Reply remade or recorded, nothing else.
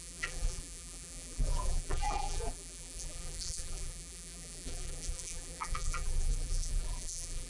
remade